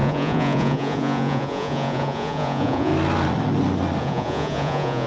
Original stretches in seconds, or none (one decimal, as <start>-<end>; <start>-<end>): 2.9-4.0